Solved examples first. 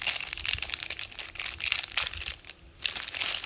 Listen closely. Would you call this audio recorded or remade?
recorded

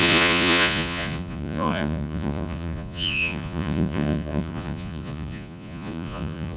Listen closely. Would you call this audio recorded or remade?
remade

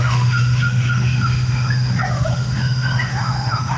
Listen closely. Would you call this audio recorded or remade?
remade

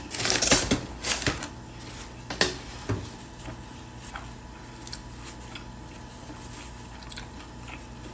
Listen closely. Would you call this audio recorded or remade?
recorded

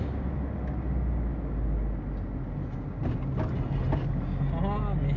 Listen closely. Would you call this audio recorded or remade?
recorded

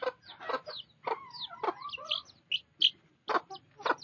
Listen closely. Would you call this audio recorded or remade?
recorded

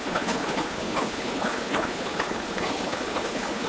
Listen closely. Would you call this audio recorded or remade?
remade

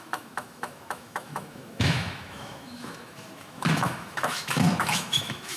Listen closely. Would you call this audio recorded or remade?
remade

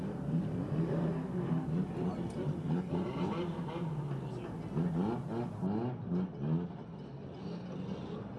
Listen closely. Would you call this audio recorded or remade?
recorded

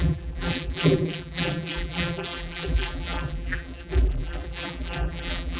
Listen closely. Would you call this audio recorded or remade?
remade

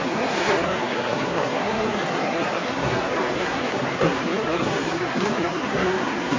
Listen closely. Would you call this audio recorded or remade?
remade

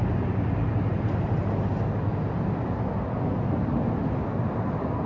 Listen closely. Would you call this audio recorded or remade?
recorded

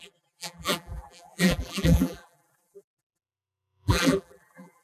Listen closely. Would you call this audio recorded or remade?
remade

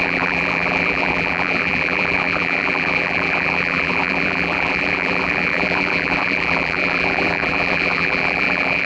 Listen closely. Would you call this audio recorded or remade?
remade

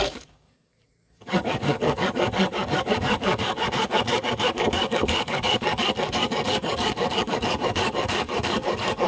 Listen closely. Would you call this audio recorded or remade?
remade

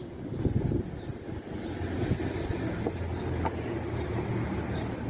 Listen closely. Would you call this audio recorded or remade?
recorded